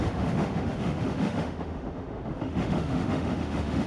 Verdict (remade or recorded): remade